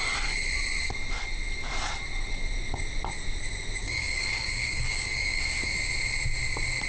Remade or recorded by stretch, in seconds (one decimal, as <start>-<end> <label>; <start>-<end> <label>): 0.0-3.8 recorded; 3.8-5.4 remade; 5.4-6.9 recorded